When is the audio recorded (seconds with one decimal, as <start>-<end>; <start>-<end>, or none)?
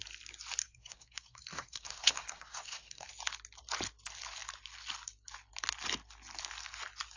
0.0-0.6; 3.1-7.2